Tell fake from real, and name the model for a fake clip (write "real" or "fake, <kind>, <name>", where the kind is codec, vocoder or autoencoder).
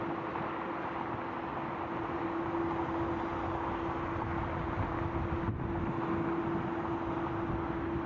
real